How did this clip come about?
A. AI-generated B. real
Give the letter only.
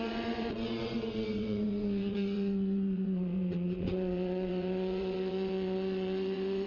A